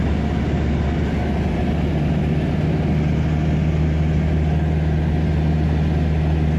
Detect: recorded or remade recorded